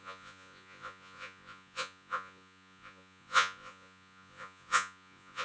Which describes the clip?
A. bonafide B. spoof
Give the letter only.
B